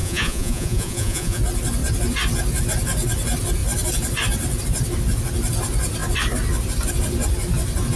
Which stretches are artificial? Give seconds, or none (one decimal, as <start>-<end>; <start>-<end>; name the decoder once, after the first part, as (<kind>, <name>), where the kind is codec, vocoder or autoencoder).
0.0-1.4 (vocoder, Vocos)